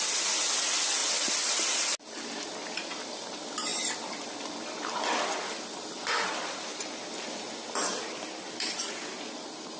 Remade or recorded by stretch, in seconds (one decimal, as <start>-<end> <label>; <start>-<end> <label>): 0.0-1.0 recorded; 1.0-1.5 remade; 1.5-9.8 recorded